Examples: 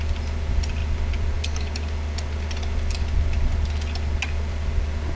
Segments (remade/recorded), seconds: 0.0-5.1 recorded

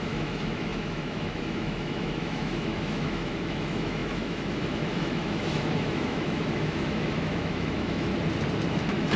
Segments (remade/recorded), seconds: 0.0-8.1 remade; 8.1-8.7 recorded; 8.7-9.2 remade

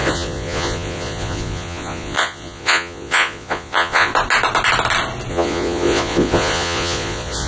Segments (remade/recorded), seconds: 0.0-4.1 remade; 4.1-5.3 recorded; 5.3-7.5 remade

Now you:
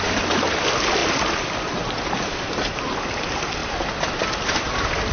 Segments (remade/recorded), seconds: 0.0-5.1 recorded